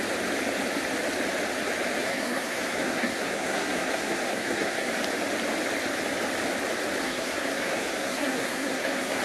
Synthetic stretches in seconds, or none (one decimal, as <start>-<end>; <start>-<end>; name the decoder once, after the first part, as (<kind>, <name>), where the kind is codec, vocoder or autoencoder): 2.0-4.9 (codec, SNAC); 7.0-9.2